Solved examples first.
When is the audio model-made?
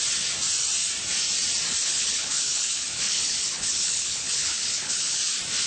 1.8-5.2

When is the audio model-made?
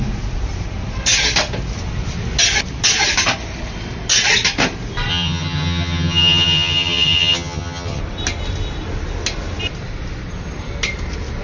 5.1-8.0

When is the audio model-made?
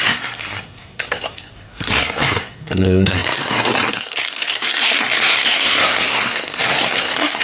0.0-7.4